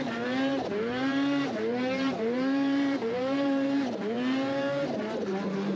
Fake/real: fake